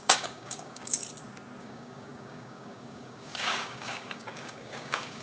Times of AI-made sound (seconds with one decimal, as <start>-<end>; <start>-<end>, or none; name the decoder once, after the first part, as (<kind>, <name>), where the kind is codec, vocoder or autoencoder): 0.0-1.0 (codec, DAC); 1.6-5.2